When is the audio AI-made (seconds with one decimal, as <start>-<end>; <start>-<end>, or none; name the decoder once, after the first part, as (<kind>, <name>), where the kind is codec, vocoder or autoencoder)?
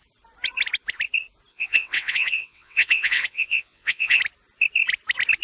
1.5-4.2 (vocoder, WaveNeXt)